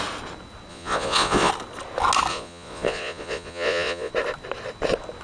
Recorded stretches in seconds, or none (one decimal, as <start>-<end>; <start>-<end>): 0.0-0.7; 1.5-2.3; 4.1-5.2